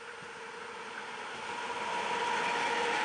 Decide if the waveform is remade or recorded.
recorded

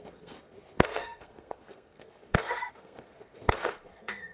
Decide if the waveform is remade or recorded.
remade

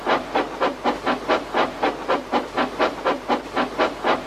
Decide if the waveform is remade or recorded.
recorded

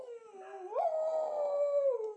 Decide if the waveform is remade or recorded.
recorded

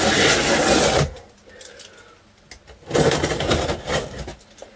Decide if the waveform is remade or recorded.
recorded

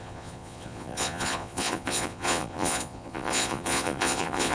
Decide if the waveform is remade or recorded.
remade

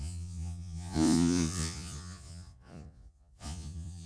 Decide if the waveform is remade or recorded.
remade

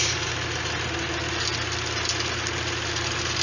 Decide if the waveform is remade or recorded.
recorded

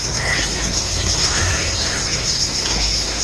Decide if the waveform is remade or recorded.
remade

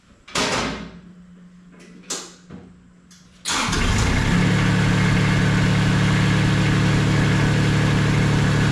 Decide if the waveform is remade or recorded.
recorded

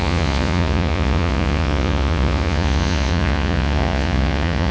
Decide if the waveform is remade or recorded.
remade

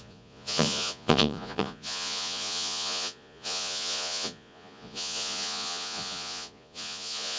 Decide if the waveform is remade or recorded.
remade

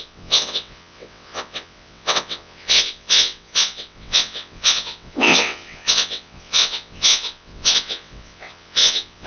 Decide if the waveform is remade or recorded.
remade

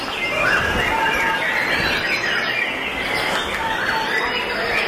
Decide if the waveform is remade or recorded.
recorded